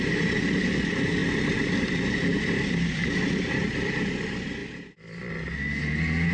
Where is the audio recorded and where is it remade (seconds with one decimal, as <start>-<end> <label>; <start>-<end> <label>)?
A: 0.0-6.3 recorded